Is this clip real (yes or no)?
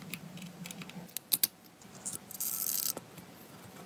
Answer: yes